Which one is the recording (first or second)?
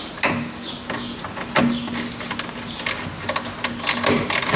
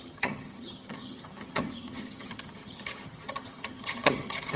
first